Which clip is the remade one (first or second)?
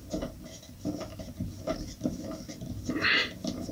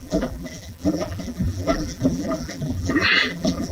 second